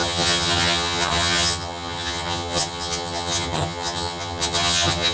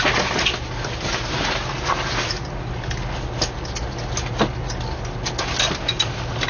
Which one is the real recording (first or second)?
second